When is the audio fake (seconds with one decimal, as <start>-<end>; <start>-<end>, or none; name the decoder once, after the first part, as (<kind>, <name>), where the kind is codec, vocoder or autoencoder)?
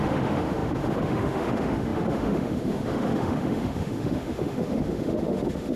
0.0-5.8 (autoencoder, DAC-VAE)